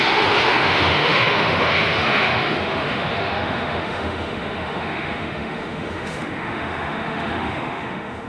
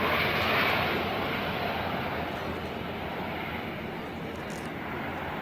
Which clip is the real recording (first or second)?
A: second